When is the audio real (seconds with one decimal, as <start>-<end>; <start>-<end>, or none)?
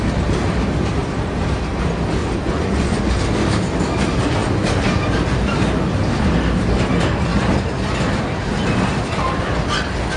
0.0-2.2; 3.0-10.2